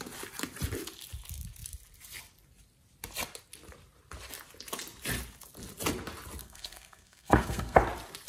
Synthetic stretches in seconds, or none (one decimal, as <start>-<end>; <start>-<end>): 6.4-7.8